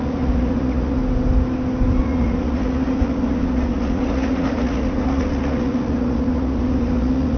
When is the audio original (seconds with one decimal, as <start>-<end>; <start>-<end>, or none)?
1.0-2.0